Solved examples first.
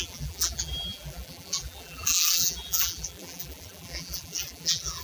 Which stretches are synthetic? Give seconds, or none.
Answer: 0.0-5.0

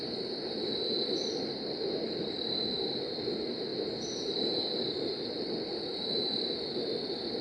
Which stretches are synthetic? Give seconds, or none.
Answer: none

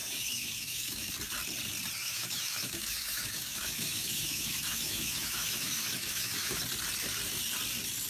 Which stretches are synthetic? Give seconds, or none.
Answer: 0.0-1.1; 2.0-6.6